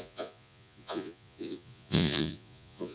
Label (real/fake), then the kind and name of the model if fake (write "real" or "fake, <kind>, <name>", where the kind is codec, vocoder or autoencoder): fake, vocoder, Vocos